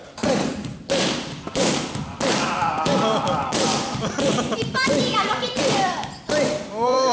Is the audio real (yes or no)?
no